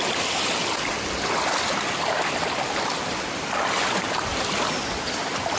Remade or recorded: recorded